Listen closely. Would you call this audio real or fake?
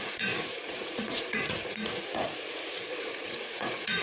fake